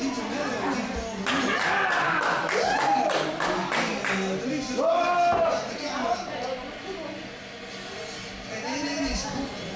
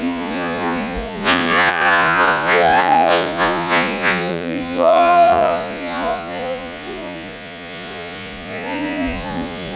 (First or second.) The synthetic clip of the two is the second